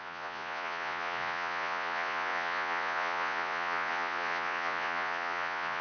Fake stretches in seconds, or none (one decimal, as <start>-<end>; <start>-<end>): 0.0-5.8